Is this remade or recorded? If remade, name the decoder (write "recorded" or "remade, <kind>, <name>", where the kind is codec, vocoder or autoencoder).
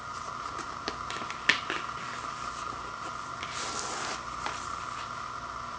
recorded